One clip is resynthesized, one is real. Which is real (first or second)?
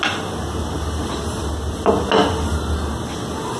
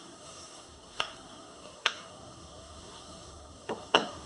first